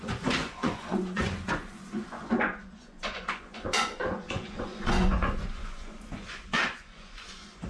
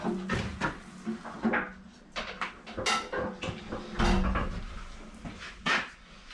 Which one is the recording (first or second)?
second